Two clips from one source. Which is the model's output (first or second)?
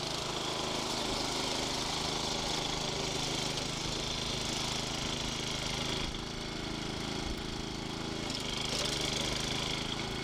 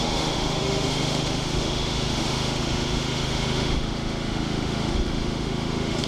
second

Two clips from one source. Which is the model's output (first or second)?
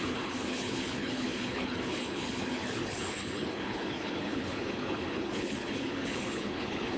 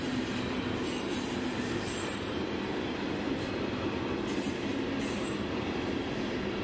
first